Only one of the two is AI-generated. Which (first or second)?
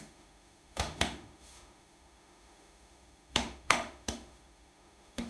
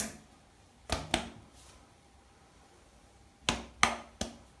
first